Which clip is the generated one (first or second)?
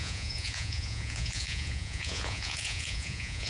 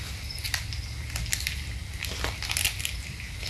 first